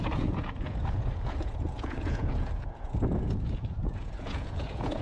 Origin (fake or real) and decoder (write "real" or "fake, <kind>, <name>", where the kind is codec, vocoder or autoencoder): fake, vocoder, Vocos